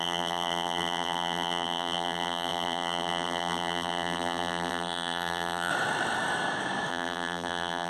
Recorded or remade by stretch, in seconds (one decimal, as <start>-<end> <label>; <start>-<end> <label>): 0.0-5.7 remade; 5.7-6.9 recorded; 6.9-7.9 remade